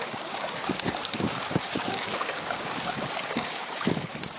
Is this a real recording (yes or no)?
no